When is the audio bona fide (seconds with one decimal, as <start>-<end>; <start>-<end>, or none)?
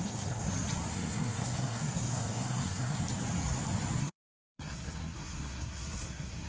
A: 0.5-0.9; 3.0-4.0